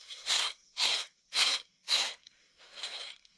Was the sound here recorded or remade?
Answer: remade